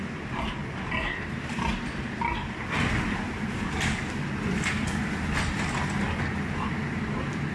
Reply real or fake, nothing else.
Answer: real